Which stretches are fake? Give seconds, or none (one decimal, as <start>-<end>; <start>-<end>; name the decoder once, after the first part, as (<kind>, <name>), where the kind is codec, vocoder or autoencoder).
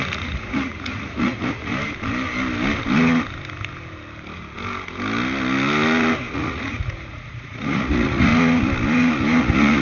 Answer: 0.0-1.7 (vocoder, Vocos); 6.3-8.3; 9.4-9.8